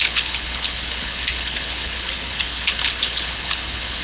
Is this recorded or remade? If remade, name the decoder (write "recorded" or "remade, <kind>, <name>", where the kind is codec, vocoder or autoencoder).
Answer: remade, codec, HILCodec